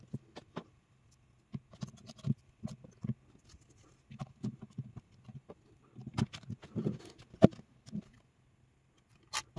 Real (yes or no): yes